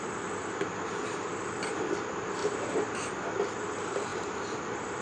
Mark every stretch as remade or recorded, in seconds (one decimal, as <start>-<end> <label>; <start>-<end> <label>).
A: 0.0-2.4 recorded; 2.4-3.2 remade; 3.2-5.0 recorded